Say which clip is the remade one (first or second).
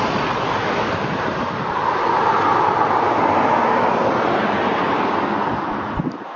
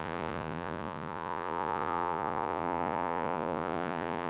second